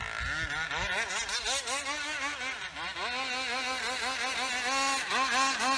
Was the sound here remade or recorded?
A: recorded